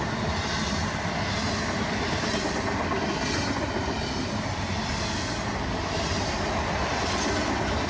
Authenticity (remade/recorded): recorded